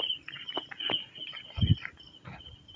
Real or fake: real